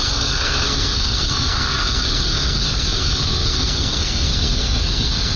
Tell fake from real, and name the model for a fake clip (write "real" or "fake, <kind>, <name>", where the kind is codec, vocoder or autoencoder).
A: fake, codec, SNAC